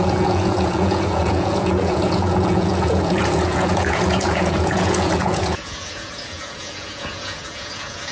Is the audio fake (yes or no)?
yes